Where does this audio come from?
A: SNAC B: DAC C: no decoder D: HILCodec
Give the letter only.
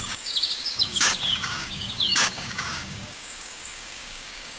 B